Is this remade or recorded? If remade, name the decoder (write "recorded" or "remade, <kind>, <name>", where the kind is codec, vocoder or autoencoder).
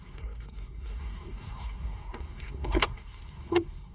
remade, codec, SNAC